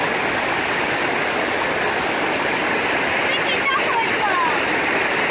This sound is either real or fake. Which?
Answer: real